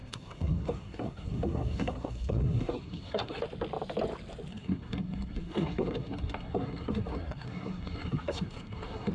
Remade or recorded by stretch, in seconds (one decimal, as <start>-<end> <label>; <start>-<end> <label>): 0.0-3.4 remade; 3.4-4.5 recorded; 4.5-9.1 remade